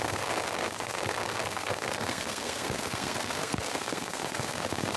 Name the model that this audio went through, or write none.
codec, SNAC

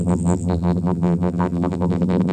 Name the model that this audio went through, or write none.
vocoder, BigVGAN v2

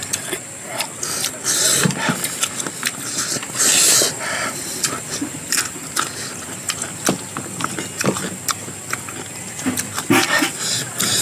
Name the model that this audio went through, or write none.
none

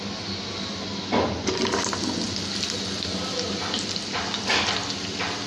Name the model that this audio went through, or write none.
none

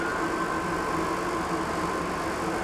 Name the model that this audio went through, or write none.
none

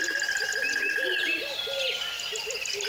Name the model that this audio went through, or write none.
none